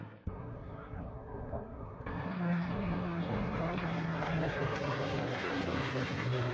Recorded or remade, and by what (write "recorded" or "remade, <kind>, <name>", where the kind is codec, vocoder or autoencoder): remade, codec, SNAC